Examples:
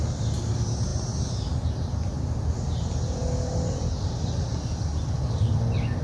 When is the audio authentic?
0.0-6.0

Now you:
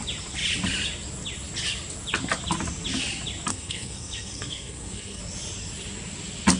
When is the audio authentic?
0.0-3.5; 5.2-6.6

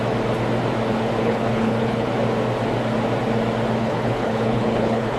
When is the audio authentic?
0.0-1.2; 2.1-3.8

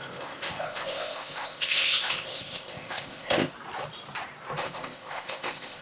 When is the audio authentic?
3.5-4.6

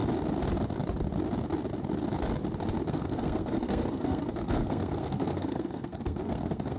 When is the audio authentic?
0.0-2.9